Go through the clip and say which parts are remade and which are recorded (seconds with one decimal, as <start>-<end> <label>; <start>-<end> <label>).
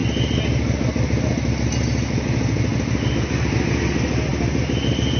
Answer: 0.0-5.2 recorded